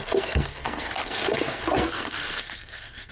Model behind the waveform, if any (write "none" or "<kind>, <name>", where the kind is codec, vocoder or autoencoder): codec, SNAC